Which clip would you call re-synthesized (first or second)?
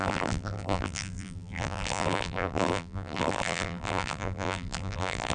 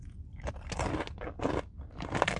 first